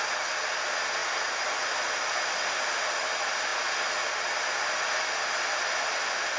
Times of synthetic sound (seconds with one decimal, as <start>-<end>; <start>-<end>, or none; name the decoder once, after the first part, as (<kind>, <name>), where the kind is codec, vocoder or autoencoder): none